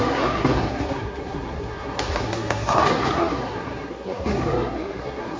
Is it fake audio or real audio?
fake